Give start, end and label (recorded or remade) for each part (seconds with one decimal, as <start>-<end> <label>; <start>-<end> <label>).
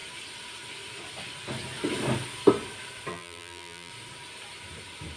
0.0-3.1 recorded; 3.1-3.9 remade; 3.9-5.2 recorded